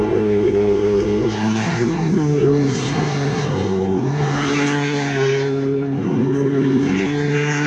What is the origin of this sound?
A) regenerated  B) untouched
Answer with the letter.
A